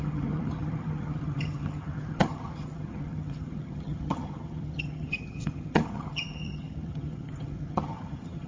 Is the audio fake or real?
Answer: fake